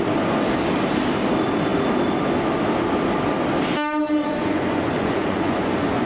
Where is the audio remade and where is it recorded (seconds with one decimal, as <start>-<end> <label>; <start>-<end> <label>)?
0.0-4.2 recorded; 4.2-6.1 remade